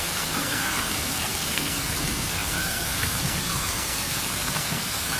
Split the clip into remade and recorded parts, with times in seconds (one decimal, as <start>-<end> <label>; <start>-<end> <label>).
0.0-5.2 remade